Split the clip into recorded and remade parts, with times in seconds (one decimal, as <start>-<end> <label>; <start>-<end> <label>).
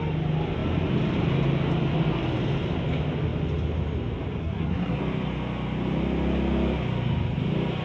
0.0-4.4 recorded; 4.4-5.0 remade; 5.0-7.8 recorded